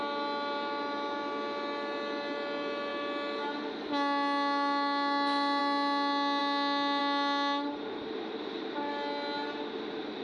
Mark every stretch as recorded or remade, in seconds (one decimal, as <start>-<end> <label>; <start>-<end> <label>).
0.0-10.2 recorded